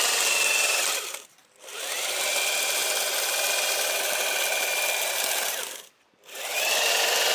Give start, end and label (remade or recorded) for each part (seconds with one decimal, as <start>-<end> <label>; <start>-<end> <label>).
0.0-2.8 remade; 2.8-3.5 recorded; 3.5-7.3 remade